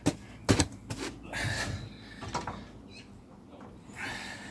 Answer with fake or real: real